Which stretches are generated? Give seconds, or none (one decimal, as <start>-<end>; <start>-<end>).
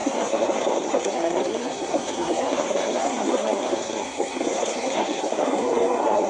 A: 0.0-6.3